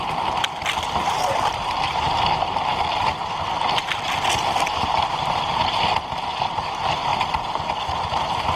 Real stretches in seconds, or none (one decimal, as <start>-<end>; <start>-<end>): 0.0-8.6